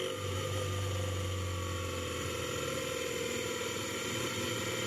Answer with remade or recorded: recorded